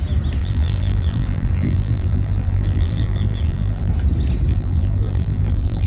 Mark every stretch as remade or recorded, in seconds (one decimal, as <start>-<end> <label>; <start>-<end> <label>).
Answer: 0.0-0.4 recorded; 0.4-3.9 remade; 3.9-4.5 recorded; 4.5-5.9 remade